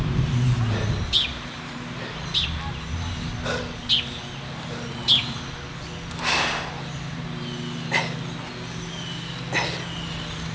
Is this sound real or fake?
real